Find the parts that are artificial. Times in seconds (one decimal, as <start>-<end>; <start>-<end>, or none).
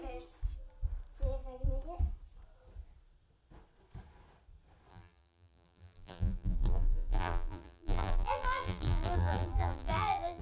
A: 4.9-10.4